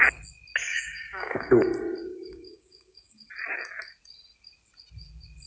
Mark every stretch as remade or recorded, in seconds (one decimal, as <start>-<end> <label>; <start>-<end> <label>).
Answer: 0.0-0.7 recorded; 0.7-1.6 remade; 1.6-2.1 recorded; 2.1-3.3 remade; 3.3-5.5 recorded